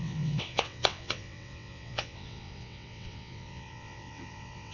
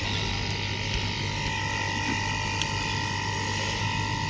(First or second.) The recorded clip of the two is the second